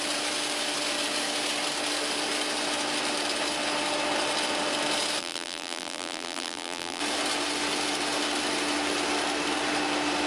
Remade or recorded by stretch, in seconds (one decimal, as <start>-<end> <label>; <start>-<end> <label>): 0.0-5.2 recorded; 5.2-7.0 remade; 7.0-10.3 recorded